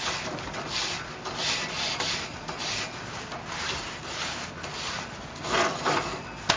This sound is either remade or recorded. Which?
recorded